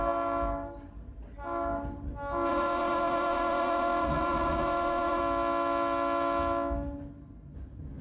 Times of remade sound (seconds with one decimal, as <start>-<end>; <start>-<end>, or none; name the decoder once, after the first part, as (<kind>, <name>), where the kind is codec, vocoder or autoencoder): 2.5-5.2 (vocoder, Vocos)